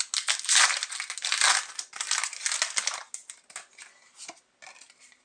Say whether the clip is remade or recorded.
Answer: recorded